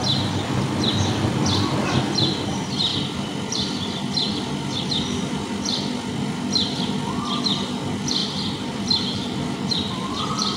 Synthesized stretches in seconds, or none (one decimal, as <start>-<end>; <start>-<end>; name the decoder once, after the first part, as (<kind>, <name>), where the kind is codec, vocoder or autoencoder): 0.0-1.8 (vocoder, BigVGAN v2); 8.2-10.2

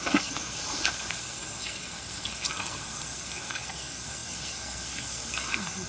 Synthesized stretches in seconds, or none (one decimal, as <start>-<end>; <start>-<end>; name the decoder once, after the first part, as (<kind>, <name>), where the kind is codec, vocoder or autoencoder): 0.0-5.9 (codec, SNAC)

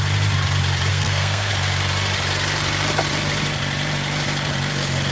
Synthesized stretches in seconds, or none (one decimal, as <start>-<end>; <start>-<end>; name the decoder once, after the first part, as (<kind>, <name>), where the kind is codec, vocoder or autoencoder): 0.9-1.5 (codec, SNAC)

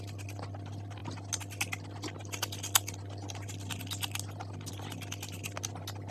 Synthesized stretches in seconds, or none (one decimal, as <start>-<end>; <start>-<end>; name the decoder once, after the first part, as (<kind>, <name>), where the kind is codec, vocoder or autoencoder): none

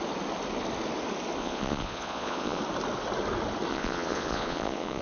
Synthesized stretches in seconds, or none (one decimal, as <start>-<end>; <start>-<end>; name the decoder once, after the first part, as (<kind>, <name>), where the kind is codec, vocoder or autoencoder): 1.4-2.6 (vocoder, Vocos); 3.7-5.0

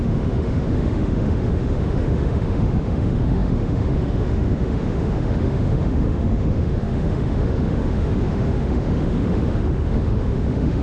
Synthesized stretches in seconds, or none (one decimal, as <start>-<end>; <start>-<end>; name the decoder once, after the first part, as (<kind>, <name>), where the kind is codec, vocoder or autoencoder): 0.0-10.8 (autoencoder, DAC-VAE)

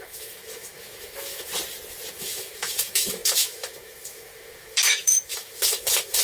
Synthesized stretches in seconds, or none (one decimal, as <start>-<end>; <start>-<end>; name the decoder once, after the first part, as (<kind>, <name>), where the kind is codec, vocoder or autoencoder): 0.0-1.5 (autoencoder, DAC-VAE); 2.1-6.2

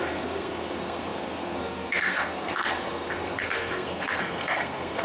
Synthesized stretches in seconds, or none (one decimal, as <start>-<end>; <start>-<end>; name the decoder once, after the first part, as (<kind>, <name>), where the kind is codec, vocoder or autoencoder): 0.0-5.0 (codec, SNAC)